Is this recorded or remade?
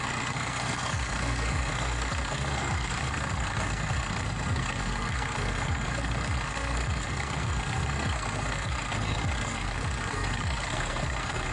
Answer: remade